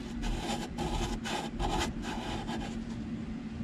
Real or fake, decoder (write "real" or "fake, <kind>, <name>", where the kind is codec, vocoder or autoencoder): real